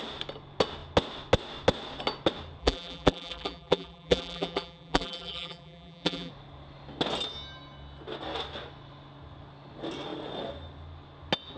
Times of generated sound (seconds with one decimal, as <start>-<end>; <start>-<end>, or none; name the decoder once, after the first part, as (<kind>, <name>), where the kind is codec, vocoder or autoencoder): 2.6-6.3 (vocoder, BigVGAN v2)